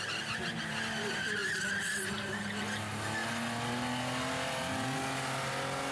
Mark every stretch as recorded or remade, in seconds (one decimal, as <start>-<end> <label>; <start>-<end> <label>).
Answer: 0.0-5.9 recorded